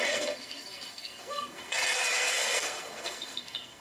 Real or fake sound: fake